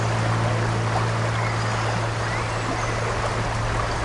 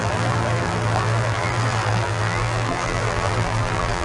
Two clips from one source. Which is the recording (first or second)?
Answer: first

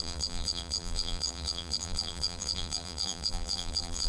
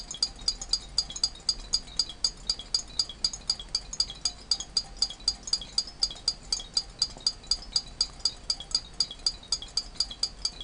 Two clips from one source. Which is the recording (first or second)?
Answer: second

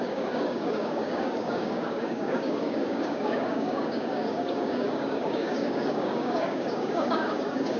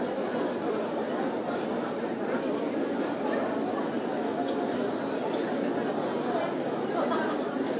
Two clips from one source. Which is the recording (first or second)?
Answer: second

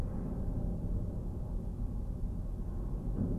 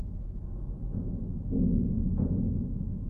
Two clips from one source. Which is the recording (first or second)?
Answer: second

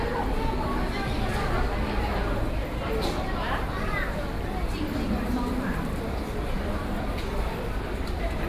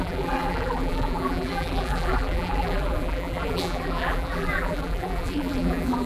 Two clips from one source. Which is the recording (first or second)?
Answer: first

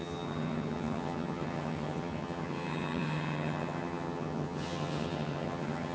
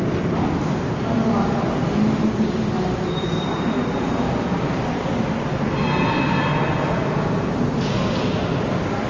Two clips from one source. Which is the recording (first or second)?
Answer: second